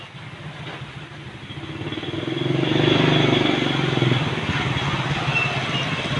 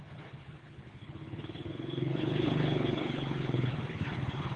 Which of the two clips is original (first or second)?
first